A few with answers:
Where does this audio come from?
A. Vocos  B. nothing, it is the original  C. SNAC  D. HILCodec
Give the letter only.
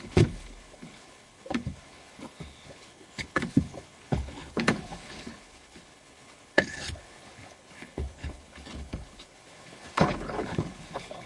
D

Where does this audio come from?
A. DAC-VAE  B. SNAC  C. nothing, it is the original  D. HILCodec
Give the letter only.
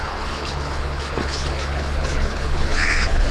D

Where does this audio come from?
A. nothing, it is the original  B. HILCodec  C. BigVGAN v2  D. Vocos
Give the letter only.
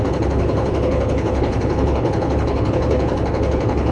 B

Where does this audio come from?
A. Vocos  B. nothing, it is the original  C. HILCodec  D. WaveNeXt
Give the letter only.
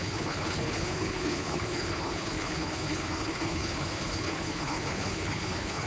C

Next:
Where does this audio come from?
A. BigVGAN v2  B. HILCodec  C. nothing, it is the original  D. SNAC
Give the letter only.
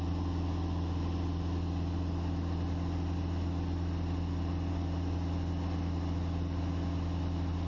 C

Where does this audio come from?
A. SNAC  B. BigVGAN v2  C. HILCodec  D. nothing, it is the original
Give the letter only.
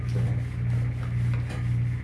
D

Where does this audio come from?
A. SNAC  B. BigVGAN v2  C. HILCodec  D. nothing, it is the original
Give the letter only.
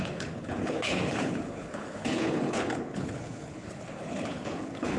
C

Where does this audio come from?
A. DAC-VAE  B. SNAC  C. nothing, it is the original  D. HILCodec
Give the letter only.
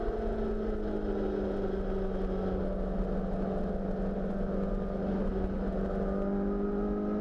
C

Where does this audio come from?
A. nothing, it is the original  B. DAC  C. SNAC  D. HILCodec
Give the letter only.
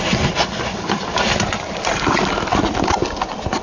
A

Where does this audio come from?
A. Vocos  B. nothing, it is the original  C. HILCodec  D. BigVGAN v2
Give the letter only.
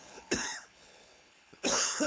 C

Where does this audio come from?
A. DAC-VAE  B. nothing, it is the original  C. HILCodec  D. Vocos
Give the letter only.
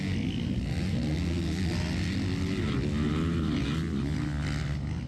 B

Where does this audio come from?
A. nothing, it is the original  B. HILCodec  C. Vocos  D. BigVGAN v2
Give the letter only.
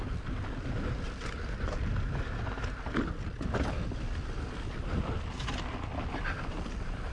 A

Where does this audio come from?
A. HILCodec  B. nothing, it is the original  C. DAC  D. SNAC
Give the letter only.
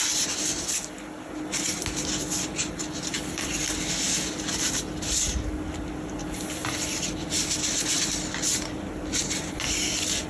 B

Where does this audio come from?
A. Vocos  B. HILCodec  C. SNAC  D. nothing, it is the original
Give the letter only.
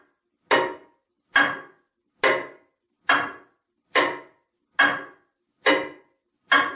D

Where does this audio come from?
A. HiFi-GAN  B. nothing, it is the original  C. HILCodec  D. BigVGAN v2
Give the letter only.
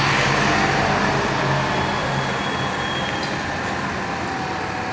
B